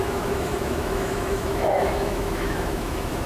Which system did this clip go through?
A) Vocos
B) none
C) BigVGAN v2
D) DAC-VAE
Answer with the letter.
D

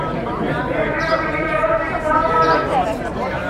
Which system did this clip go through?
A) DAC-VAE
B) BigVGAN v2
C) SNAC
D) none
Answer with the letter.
B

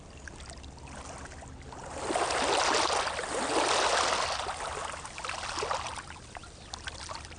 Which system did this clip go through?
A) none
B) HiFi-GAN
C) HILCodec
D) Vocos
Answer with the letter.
A